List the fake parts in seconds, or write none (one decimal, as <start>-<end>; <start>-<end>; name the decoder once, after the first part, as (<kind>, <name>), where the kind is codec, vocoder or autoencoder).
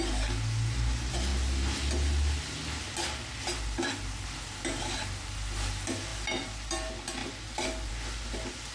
7.2-7.9 (vocoder, BigVGAN v2)